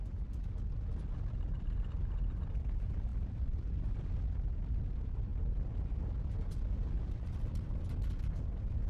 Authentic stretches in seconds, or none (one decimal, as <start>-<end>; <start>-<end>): 0.0-3.1; 4.1-8.9